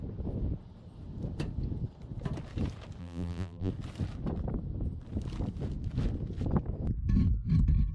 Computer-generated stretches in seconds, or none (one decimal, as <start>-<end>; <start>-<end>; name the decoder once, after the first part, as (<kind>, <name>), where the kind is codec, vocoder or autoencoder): 3.0-3.7 (vocoder, BigVGAN v2)